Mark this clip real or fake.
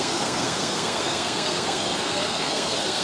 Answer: fake